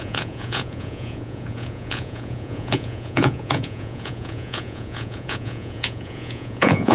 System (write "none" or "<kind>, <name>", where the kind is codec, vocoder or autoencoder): vocoder, Vocos